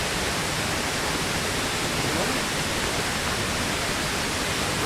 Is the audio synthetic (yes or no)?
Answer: no